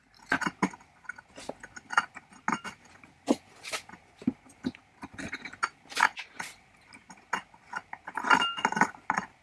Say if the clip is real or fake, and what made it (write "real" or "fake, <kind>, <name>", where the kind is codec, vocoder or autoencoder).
real